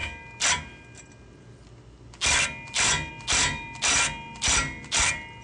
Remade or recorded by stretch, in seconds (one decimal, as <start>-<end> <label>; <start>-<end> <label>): 0.0-5.4 recorded